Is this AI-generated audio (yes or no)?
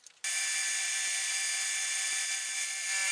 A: no